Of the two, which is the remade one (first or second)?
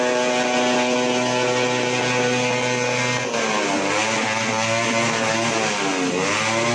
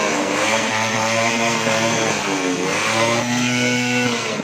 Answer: second